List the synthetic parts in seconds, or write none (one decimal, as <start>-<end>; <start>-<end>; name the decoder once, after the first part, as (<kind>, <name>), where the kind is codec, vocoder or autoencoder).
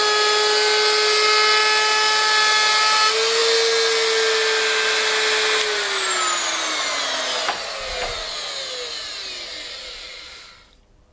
none